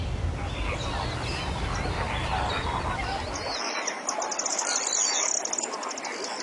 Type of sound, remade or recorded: recorded